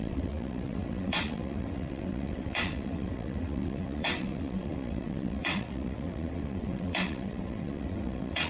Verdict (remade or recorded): remade